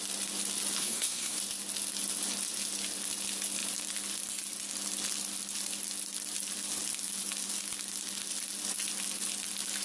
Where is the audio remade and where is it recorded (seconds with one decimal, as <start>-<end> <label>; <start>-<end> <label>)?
0.0-0.8 recorded; 0.8-1.4 remade; 1.4-9.8 recorded